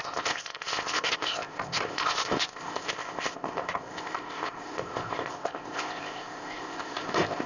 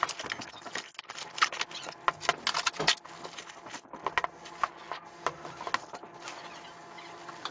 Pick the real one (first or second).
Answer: second